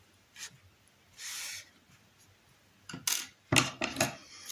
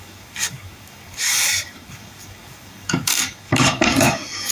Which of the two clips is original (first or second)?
first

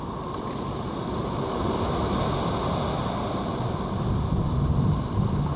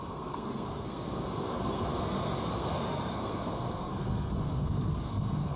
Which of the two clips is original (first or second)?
first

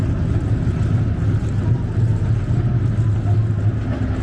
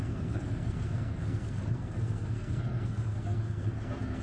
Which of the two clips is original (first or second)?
first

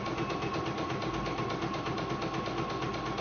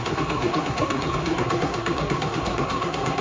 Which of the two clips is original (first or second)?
first